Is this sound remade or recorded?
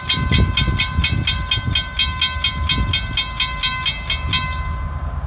recorded